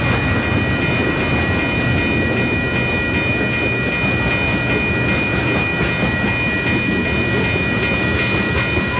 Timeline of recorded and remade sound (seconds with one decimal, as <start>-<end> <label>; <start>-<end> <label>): 0.0-9.0 recorded